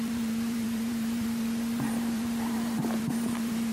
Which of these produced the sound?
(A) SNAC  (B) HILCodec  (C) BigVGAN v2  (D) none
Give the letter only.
C